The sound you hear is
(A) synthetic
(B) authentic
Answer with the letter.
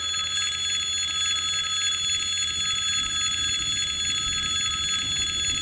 B